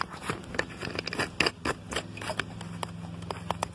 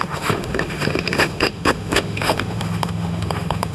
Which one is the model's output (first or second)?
second